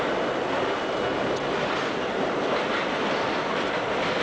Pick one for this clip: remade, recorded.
recorded